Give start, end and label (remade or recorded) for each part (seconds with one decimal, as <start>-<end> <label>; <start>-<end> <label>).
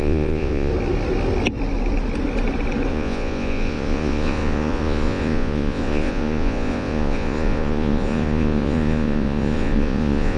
0.0-0.7 remade; 0.7-2.9 recorded; 2.9-10.4 remade